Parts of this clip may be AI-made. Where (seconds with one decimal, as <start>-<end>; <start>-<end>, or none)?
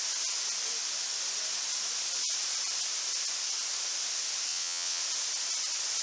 4.5-5.0